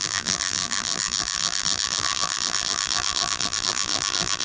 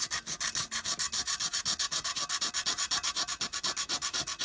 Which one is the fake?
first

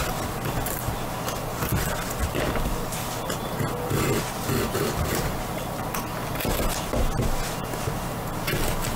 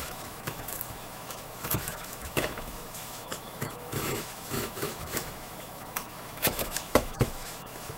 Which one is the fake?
second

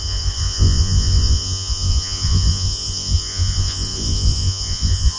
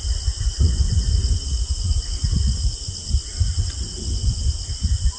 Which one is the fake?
first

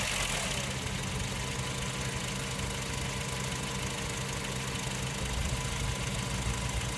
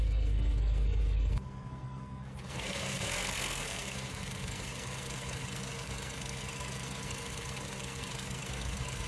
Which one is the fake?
second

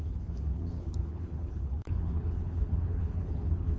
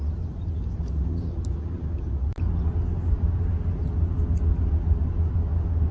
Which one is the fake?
first